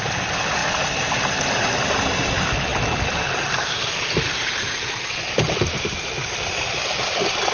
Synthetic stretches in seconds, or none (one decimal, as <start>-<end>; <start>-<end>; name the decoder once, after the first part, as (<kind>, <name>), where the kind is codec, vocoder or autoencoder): 2.7-6.1 (vocoder, BigVGAN v2)